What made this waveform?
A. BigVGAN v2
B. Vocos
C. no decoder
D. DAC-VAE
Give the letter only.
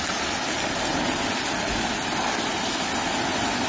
C